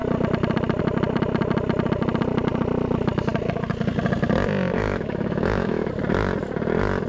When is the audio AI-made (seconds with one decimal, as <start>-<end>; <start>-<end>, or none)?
4.8-5.9